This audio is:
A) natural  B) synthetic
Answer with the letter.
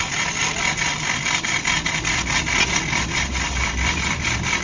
A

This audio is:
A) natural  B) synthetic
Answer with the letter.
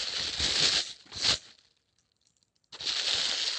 A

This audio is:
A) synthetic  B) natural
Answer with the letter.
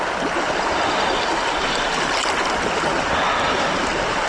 B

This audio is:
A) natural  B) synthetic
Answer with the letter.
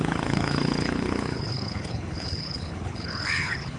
B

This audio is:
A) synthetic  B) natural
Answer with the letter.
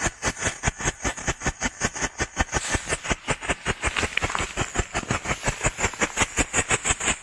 B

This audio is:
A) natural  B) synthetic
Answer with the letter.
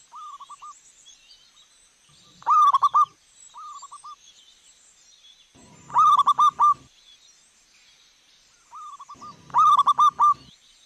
A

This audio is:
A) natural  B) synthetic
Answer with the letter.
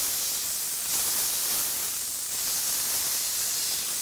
A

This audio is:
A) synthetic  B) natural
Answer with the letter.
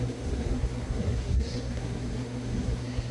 A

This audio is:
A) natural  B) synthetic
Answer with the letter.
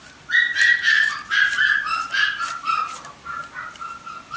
A